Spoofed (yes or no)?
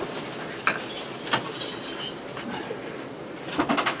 no